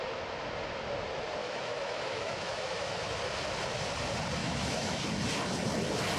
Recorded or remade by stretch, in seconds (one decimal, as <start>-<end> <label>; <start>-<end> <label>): 0.0-1.4 recorded; 1.4-3.2 remade; 3.2-4.4 recorded; 4.4-5.0 remade; 5.0-6.2 recorded